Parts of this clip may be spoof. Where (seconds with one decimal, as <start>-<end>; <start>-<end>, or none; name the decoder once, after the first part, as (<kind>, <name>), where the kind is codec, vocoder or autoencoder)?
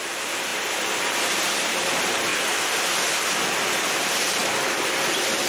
0.0-2.3 (vocoder, BigVGAN v2); 4.0-4.4; 5.1-5.5